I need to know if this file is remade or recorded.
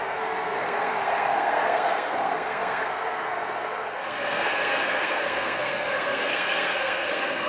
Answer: remade